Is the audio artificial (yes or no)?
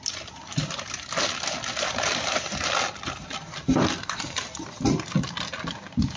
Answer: no